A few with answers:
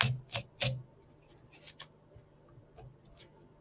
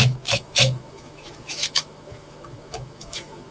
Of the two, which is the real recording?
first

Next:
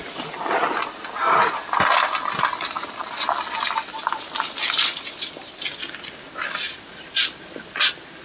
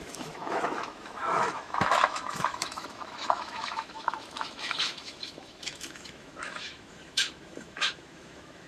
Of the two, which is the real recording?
first